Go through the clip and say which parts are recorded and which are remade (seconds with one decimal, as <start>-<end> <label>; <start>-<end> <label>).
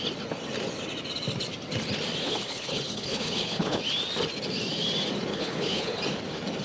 0.0-2.2 recorded; 2.2-3.8 remade; 3.8-5.3 recorded; 5.3-6.0 remade; 6.0-6.6 recorded